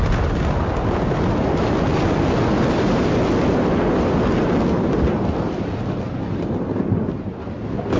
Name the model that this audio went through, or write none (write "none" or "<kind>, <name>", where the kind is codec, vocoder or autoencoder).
none